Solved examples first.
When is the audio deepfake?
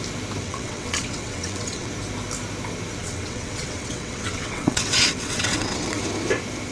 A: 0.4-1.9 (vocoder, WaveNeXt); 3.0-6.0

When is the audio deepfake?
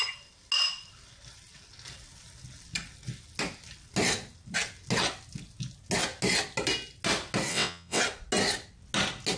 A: 7.5-8.0 (vocoder, WaveNeXt)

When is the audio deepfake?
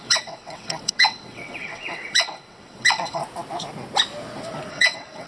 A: 0.0-3.2 (vocoder, WaveNeXt); 4.7-5.3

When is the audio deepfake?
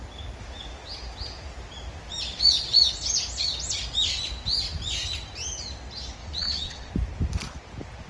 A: 6.2-6.9 (vocoder, WaveNeXt)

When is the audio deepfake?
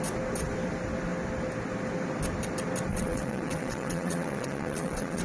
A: 2.9-5.2 (vocoder, WaveNeXt)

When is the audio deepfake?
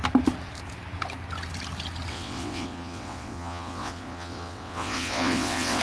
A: 2.1-5.8 (vocoder, WaveNeXt)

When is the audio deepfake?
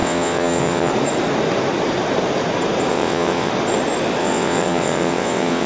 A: 0.0-0.9 (vocoder, WaveNeXt); 2.9-3.5; 4.2-5.7